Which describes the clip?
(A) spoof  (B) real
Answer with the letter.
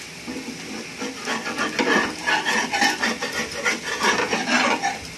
B